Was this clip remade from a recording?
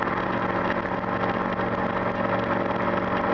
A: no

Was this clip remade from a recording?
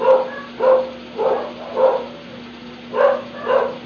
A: no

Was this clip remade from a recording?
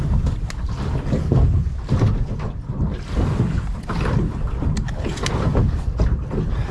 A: no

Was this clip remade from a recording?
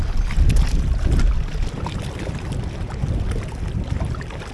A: no